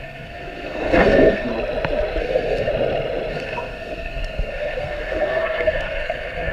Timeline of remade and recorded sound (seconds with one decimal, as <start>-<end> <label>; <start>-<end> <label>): 0.0-1.5 remade; 1.5-2.2 recorded; 2.2-2.7 remade; 2.7-3.3 recorded; 3.3-6.5 remade